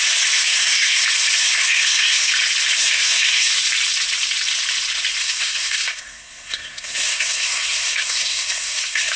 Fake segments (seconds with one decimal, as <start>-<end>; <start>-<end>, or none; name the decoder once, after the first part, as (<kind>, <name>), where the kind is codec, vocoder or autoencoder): 0.4-1.0 (codec, SNAC); 1.4-2.3; 2.8-3.5; 5.2-9.2